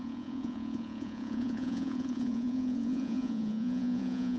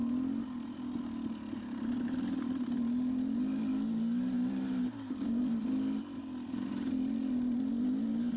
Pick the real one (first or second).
second